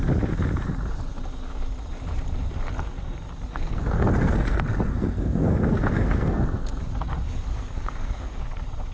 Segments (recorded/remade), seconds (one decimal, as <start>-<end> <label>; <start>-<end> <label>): 0.0-3.5 recorded; 3.5-6.8 remade; 6.8-7.5 recorded; 7.5-8.4 remade; 8.4-8.9 recorded